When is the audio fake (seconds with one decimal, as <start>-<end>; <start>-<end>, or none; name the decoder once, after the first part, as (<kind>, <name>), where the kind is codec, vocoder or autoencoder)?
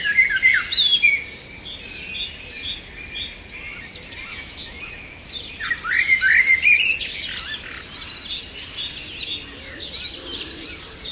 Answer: 4.3-5.3 (autoencoder, DAC-VAE)